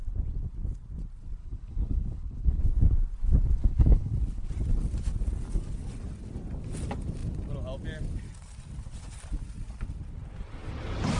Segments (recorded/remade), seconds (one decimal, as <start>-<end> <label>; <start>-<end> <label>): 0.0-1.4 recorded; 1.4-2.6 remade; 2.6-3.6 recorded; 3.6-4.5 remade; 4.5-11.2 recorded